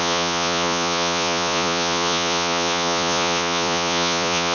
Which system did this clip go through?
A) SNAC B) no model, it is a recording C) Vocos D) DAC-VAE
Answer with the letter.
C